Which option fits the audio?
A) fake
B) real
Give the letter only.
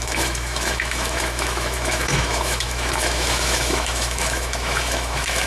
A